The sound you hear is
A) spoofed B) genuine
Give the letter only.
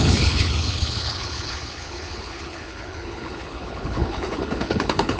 A